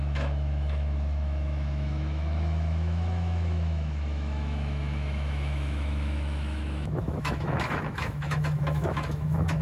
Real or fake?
fake